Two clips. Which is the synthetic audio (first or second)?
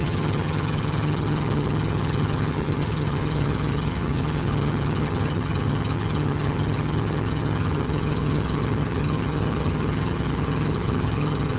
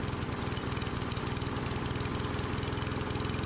first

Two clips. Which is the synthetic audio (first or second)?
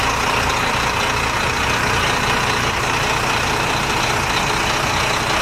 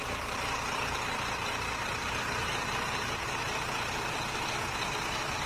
second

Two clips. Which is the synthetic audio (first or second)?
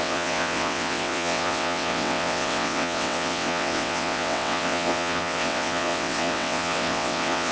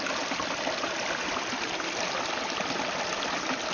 first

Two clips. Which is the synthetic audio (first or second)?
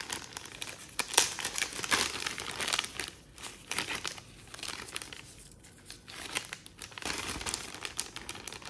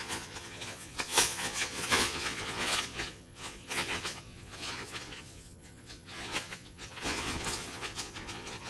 second